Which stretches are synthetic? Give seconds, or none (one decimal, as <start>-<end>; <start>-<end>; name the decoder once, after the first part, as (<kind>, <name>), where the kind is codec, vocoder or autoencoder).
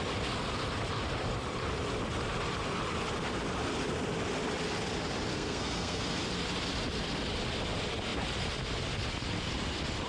5.3-6.0 (codec, SNAC)